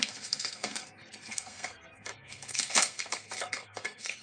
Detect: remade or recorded remade